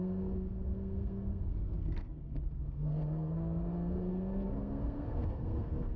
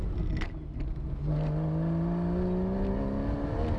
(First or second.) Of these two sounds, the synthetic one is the first